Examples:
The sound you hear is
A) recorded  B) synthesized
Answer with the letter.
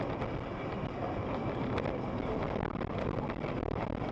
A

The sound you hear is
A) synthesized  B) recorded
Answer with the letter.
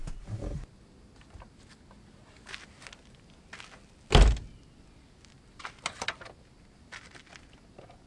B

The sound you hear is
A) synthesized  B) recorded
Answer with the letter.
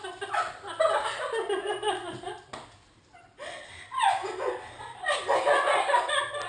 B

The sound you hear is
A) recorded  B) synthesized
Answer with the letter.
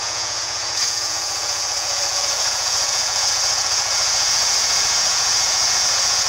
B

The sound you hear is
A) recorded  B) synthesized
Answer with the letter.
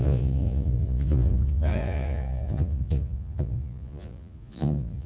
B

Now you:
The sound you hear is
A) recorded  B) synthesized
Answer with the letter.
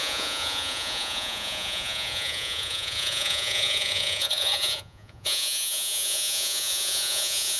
B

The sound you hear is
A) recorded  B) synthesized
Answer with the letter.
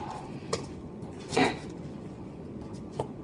B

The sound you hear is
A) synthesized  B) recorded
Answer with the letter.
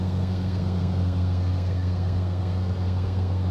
A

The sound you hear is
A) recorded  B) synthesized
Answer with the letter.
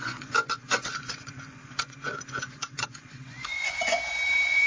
B